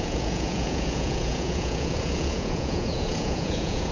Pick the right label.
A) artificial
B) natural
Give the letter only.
A